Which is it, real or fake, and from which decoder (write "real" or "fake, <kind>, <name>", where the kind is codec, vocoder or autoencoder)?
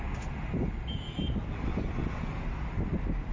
real